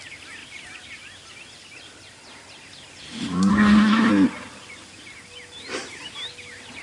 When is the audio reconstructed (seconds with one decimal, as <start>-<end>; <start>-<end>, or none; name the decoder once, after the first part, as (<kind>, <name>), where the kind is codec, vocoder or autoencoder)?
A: 3.5-4.1 (codec, SNAC)